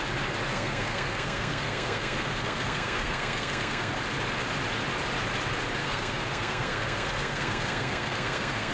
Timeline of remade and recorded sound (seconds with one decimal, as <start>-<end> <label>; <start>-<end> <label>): 0.0-0.5 recorded; 0.5-3.9 remade; 3.9-5.8 recorded; 5.8-8.7 remade